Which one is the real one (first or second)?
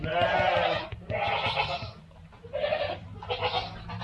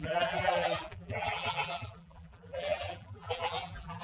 first